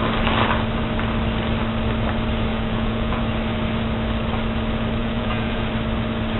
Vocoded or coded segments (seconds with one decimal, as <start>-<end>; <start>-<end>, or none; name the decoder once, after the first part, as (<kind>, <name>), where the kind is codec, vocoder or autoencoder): 2.5-3.2 (vocoder, Vocos); 5.0-5.7